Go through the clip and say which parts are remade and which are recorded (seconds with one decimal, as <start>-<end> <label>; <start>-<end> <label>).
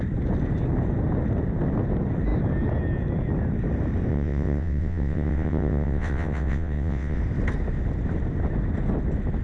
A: 0.0-4.1 recorded; 4.1-7.2 remade; 7.2-9.4 recorded